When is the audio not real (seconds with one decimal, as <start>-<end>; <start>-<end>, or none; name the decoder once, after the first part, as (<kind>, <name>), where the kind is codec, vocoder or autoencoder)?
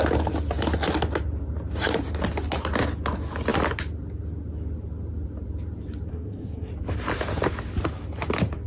6.1-6.7 (codec, SNAC)